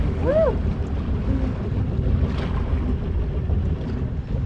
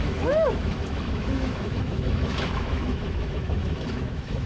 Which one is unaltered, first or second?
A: first